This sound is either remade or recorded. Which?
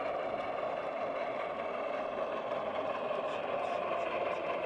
recorded